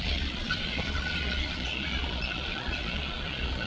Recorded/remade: remade